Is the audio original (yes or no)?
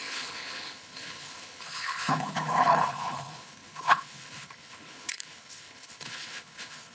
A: no